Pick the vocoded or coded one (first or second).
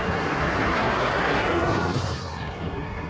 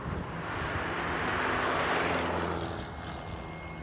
first